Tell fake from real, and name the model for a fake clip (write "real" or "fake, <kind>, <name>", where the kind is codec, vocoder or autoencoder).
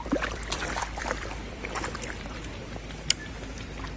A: fake, vocoder, BigVGAN v2